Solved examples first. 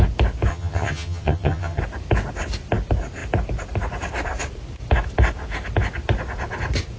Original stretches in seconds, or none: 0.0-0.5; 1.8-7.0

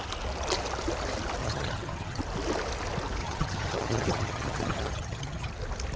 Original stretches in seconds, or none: 0.0-1.4; 2.2-3.2; 5.5-6.0

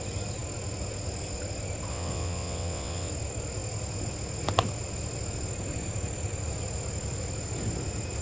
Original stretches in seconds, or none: 0.0-1.9; 3.1-8.2

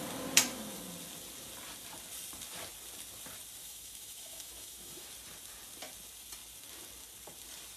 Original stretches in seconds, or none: 0.0-3.6; 5.1-7.8